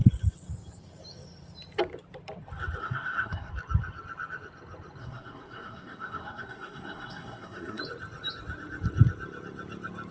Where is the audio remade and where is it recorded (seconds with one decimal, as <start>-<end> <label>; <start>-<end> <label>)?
0.0-2.8 recorded; 2.8-3.5 remade; 3.5-5.0 recorded; 5.0-7.8 remade; 7.8-10.1 recorded